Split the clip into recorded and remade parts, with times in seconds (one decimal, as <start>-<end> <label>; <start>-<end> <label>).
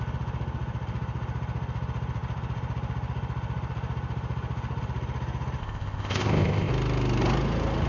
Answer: 0.0-5.6 recorded; 5.6-6.7 remade; 6.7-7.9 recorded